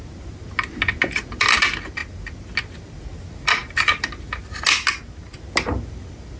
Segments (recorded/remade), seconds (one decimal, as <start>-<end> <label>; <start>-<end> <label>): 0.0-6.4 recorded